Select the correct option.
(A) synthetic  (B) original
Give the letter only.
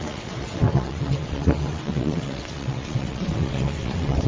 A